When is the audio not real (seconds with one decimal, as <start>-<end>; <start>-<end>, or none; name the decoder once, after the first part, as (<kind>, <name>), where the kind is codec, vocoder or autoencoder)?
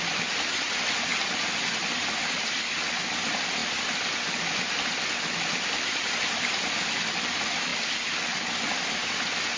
0.0-1.1 (vocoder, BigVGAN v2); 3.0-9.6